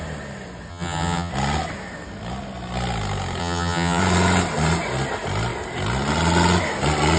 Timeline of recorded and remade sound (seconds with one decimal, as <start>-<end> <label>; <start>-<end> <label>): 0.0-0.7 recorded; 0.7-1.3 remade; 1.3-3.4 recorded; 3.4-4.0 remade; 4.0-7.2 recorded